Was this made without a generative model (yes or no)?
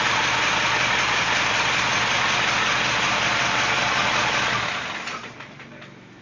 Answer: yes